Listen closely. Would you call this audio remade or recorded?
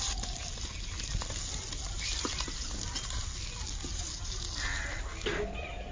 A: recorded